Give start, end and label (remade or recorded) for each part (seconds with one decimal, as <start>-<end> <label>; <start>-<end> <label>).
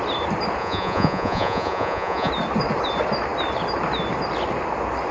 0.0-0.6 recorded; 0.6-2.3 remade; 2.3-5.1 recorded